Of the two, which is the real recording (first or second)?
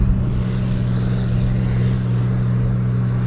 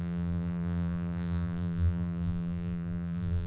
first